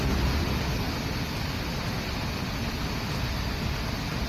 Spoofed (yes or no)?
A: no